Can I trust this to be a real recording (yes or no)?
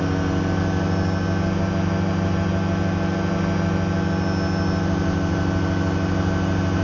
yes